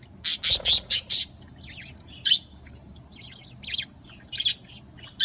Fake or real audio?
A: real